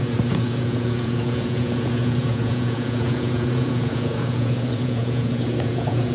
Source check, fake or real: fake